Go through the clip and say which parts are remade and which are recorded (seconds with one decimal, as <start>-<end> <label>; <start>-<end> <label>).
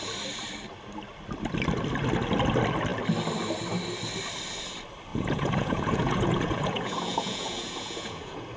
0.0-5.1 recorded; 5.1-8.6 remade